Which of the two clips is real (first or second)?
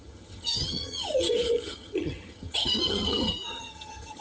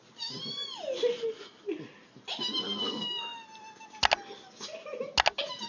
second